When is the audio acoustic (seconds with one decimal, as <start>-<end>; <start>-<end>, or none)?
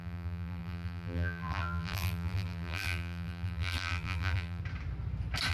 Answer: 4.6-5.5